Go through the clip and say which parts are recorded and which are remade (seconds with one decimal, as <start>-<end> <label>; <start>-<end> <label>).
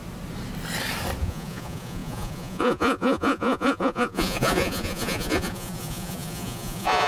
0.0-1.2 recorded; 1.2-7.1 remade